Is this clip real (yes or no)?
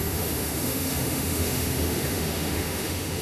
no